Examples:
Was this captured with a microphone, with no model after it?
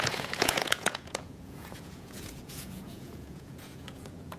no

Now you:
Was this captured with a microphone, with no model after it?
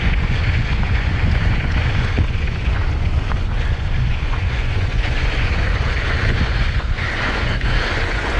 no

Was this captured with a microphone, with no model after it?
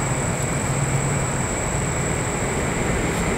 no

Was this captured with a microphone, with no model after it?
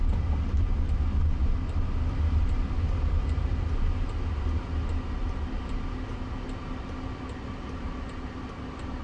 yes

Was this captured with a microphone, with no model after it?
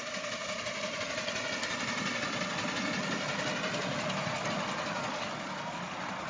yes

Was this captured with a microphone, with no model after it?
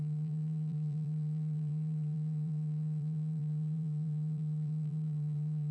no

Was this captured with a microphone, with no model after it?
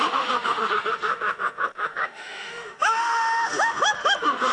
no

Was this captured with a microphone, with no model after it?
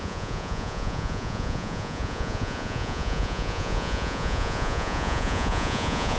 no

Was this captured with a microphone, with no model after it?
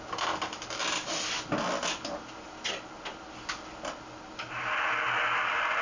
yes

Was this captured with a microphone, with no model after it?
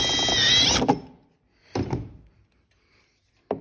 yes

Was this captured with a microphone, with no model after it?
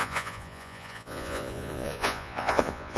no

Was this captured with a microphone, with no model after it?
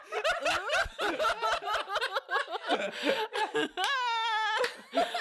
yes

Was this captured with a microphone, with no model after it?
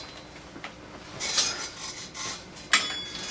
yes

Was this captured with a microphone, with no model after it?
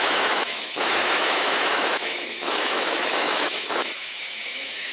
no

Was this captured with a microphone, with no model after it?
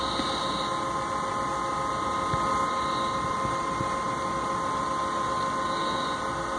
yes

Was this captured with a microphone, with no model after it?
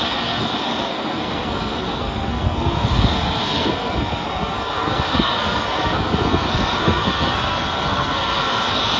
no